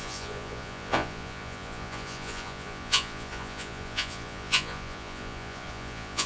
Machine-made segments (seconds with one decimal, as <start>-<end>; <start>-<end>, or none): 0.0-6.3

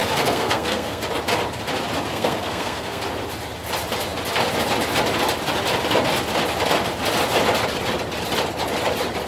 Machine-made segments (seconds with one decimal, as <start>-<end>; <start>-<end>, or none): 0.0-1.0; 2.1-3.0

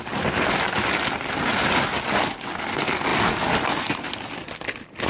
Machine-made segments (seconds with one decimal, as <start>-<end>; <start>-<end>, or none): none

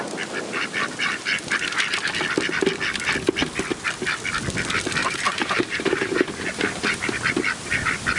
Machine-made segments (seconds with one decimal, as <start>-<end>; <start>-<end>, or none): 5.0-6.3